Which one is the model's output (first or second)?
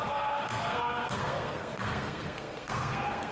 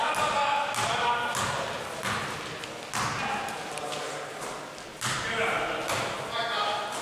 first